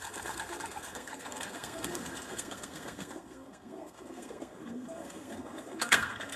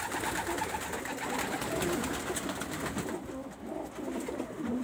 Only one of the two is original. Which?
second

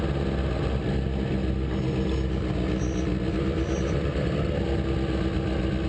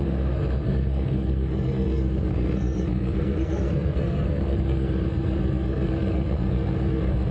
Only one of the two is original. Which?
first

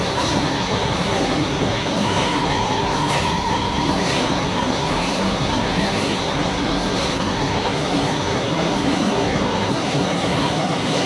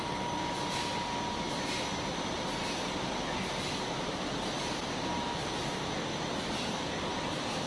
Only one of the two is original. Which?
second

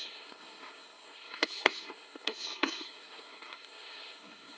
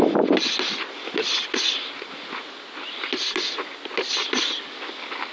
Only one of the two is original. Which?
second